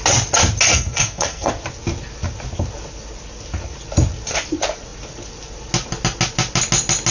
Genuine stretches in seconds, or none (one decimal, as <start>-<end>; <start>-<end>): 0.0-0.7; 1.5-7.1